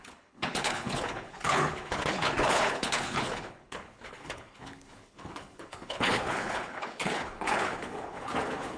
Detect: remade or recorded remade